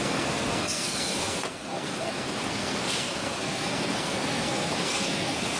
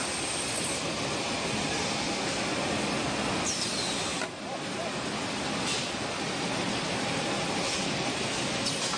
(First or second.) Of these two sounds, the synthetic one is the first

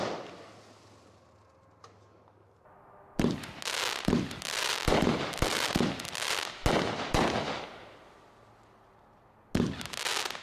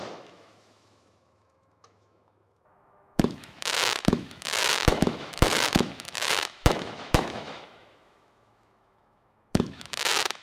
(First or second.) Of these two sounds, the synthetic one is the second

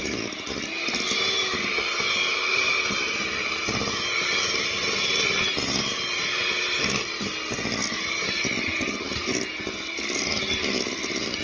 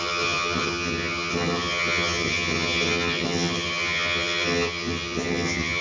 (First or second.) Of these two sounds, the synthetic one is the second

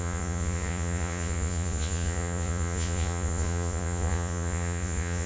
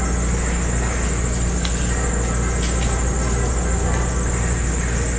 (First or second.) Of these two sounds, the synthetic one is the first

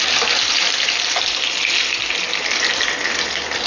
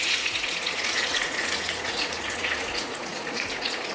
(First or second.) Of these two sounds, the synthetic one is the second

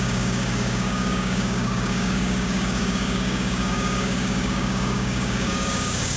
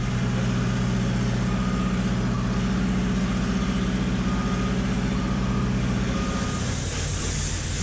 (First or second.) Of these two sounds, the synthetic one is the first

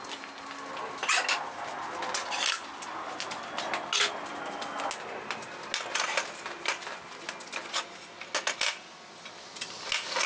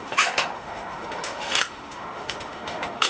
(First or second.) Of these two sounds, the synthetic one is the second